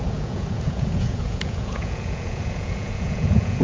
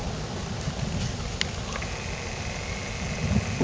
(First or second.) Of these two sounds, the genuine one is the second